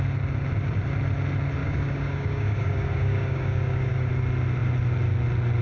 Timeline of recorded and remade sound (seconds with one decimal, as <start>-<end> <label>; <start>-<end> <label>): 0.0-1.6 recorded; 1.6-4.1 remade; 4.1-5.6 recorded

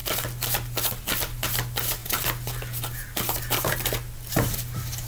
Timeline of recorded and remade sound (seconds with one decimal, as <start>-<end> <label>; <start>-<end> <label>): 0.0-5.1 recorded

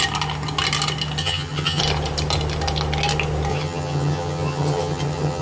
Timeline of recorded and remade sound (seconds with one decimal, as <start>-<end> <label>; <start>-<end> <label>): 0.0-1.2 recorded; 1.2-1.8 remade; 1.8-3.5 recorded; 3.5-5.4 remade

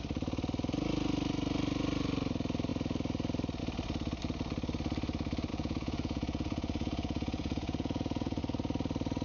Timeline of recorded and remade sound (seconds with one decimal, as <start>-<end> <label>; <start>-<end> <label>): 0.0-5.5 recorded; 5.5-8.4 remade; 8.4-9.2 recorded

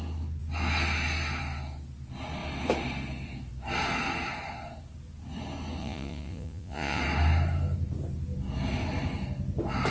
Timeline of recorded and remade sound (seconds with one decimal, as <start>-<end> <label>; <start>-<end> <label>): 0.0-5.8 recorded; 5.8-7.0 remade; 7.0-9.9 recorded

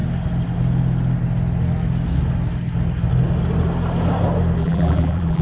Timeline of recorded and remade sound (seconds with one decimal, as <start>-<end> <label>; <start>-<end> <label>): 0.0-4.6 recorded; 4.6-5.4 remade

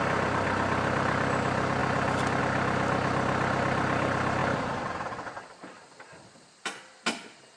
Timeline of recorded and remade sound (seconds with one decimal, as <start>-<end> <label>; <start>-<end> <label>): 0.0-7.6 recorded